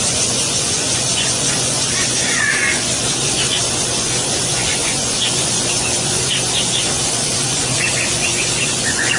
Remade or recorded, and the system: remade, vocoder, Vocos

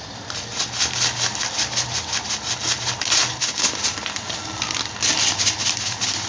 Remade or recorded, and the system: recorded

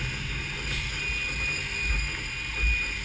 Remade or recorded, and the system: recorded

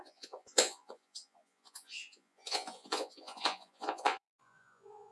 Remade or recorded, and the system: remade, vocoder, Vocos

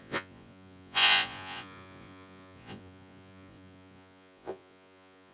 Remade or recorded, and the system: remade, vocoder, Vocos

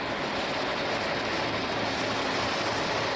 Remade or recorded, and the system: recorded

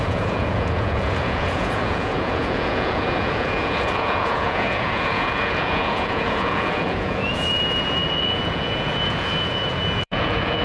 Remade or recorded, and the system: remade, vocoder, Vocos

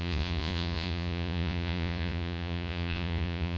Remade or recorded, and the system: remade, vocoder, Vocos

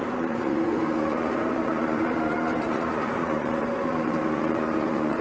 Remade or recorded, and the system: remade, vocoder, Vocos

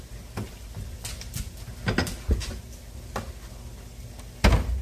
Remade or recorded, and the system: recorded